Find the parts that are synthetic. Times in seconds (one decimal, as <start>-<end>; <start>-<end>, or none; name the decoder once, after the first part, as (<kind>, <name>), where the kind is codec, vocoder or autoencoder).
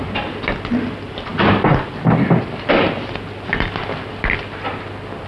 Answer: none